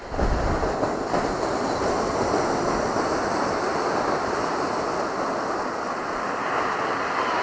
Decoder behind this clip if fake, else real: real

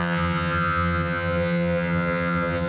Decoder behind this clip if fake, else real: fake, vocoder, HiFi-GAN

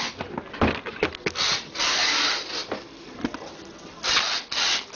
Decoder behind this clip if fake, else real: real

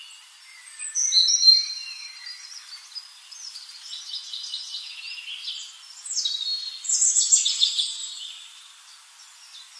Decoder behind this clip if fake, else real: real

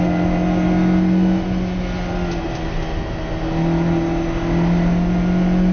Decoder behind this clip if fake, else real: real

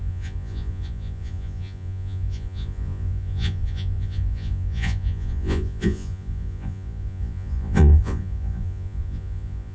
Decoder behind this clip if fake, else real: fake, vocoder, Vocos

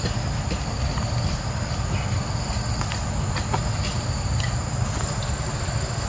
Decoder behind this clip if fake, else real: real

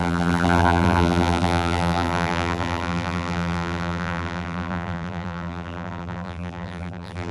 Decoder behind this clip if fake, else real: fake, vocoder, BigVGAN v2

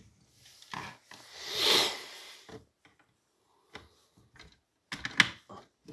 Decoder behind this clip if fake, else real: real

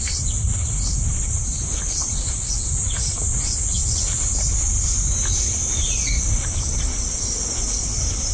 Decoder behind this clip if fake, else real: fake, vocoder, BigVGAN v2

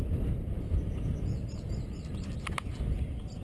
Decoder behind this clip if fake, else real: real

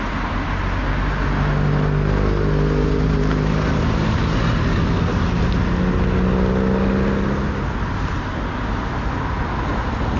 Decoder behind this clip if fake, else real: real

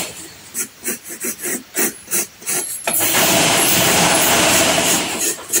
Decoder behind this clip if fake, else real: fake, vocoder, BigVGAN v2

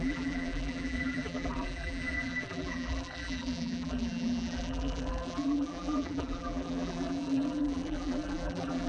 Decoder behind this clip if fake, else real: fake, vocoder, BigVGAN v2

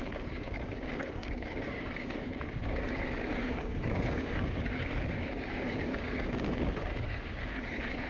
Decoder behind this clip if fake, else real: fake, codec, DAC